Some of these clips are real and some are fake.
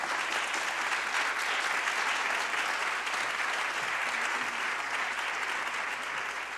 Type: real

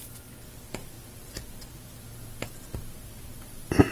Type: real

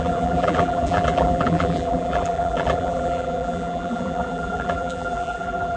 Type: fake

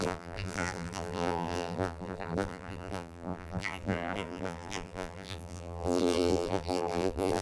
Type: fake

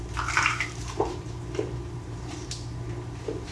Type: fake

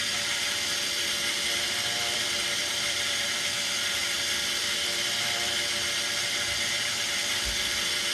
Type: fake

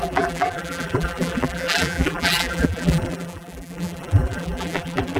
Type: fake